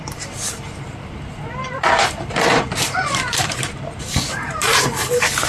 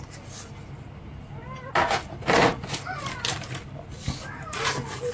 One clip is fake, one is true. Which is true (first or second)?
second